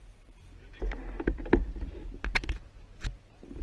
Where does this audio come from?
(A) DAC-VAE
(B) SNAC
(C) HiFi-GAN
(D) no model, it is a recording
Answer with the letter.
D